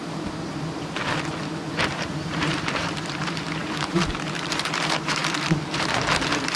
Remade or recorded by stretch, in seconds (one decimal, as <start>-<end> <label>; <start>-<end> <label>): 0.0-2.0 recorded; 2.0-6.6 remade